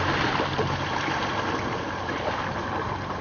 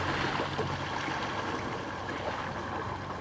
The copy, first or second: first